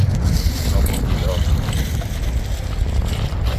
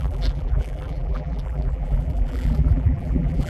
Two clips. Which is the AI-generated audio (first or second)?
second